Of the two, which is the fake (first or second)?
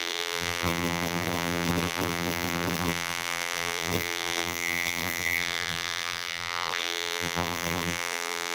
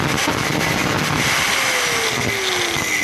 first